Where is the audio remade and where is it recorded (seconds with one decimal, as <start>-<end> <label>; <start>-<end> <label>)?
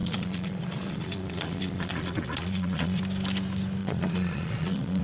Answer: 0.0-3.0 remade; 3.0-3.8 recorded; 3.8-5.0 remade